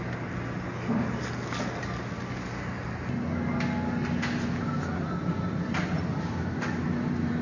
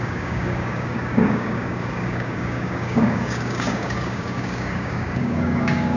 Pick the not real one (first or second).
second